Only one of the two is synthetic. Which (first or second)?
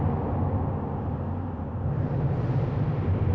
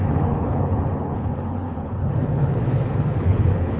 second